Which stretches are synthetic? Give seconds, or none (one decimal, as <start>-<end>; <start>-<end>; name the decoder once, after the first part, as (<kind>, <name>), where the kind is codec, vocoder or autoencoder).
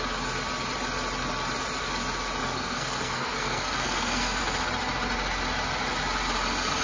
2.4-4.4 (codec, SNAC)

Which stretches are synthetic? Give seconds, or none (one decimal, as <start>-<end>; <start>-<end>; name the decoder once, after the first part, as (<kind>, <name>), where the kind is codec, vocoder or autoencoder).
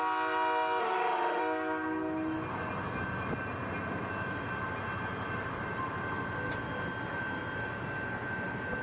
0.8-1.4 (autoencoder, DAC-VAE)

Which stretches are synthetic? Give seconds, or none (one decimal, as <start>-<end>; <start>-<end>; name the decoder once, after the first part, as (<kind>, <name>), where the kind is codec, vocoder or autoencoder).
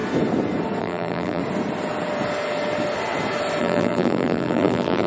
0.8-1.4 (vocoder, BigVGAN v2); 3.6-5.1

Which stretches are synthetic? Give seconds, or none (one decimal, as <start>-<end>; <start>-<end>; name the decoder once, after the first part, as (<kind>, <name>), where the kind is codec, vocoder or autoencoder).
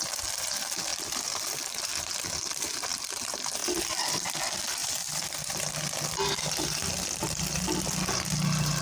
0.0-4.8 (vocoder, BigVGAN v2); 6.5-8.8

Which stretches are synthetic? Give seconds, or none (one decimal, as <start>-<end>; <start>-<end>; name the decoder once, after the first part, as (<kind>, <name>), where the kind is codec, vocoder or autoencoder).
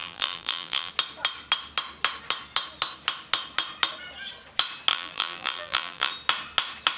0.0-0.9 (vocoder, BigVGAN v2); 4.9-6.1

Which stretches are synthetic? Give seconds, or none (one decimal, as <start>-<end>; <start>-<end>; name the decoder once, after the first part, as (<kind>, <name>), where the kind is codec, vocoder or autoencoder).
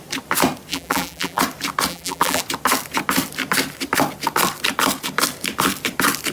0.7-1.4 (vocoder, BigVGAN v2); 1.9-2.4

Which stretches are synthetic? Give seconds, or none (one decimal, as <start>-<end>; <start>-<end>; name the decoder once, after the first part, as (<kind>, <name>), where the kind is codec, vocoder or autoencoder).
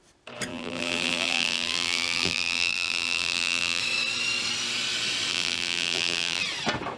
0.5-3.8 (vocoder, BigVGAN v2); 5.3-6.4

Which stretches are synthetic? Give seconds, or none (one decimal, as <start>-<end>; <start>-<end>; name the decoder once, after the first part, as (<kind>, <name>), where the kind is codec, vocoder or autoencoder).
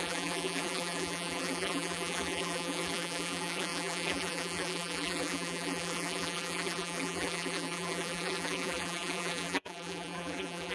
0.0-10.7 (vocoder, BigVGAN v2)